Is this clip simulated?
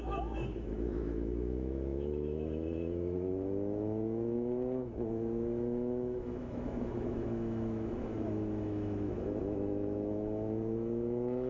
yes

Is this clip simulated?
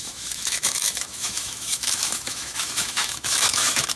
yes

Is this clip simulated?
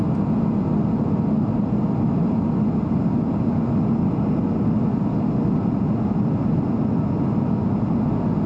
no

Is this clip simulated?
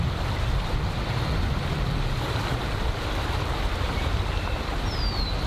no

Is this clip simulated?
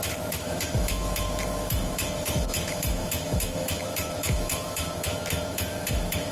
yes